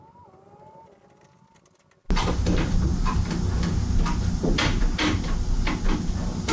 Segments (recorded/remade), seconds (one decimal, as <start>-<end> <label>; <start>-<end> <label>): 0.0-6.5 recorded